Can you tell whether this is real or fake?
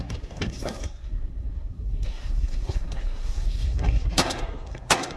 fake